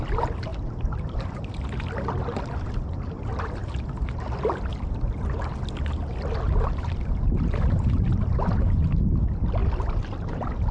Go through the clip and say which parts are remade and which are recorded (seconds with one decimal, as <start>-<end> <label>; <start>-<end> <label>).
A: 0.0-10.7 recorded

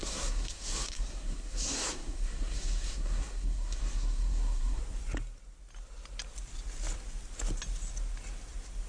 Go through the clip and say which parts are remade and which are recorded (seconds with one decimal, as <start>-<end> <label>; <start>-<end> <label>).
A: 0.0-4.8 remade; 4.8-8.9 recorded

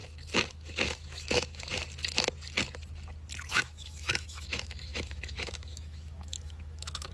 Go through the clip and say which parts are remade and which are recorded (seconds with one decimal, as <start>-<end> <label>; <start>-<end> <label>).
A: 0.0-0.5 recorded; 0.5-1.7 remade; 1.7-3.5 recorded; 3.5-7.1 remade